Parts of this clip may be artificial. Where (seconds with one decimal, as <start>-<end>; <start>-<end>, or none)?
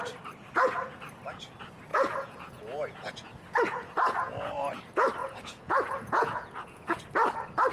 1.9-4.8; 5.2-7.0